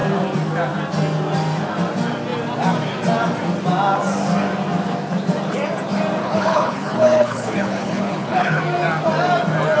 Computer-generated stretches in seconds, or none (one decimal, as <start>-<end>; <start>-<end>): 6.2-8.6